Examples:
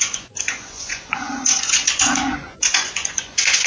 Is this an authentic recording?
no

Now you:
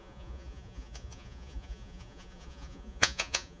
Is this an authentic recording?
no